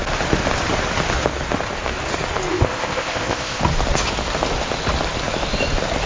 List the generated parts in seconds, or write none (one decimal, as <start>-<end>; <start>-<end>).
2.5-3.6